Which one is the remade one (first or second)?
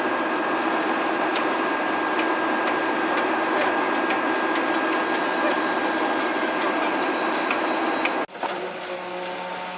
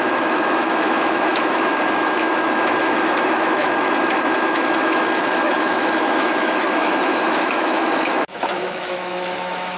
second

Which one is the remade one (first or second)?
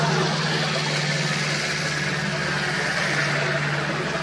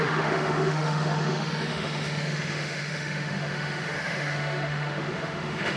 second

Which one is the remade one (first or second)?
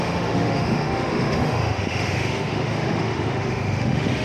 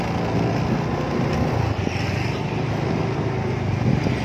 first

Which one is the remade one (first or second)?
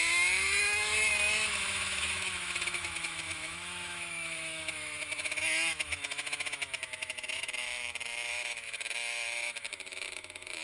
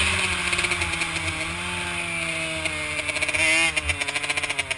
first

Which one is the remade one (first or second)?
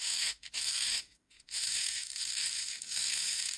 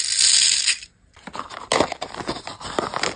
first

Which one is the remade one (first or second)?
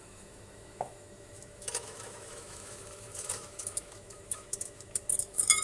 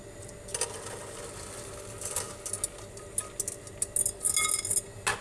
first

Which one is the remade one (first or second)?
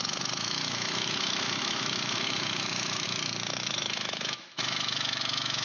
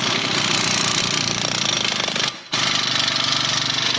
first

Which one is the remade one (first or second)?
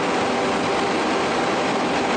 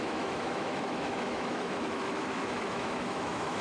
second